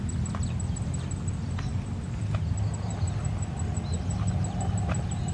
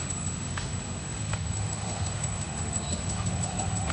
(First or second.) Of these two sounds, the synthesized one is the second